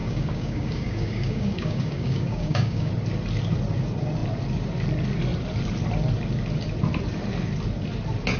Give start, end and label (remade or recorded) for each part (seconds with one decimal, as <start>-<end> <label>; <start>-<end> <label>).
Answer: 0.0-2.9 remade; 2.9-8.4 recorded